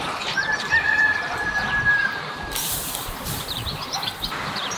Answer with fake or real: fake